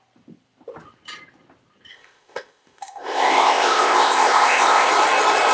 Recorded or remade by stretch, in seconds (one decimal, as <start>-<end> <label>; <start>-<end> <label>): 0.0-1.9 recorded; 1.9-4.9 remade; 4.9-5.5 recorded